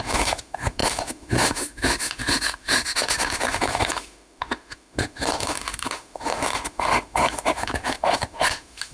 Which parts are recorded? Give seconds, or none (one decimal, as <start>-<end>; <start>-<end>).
none